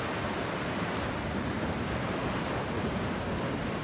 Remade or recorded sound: recorded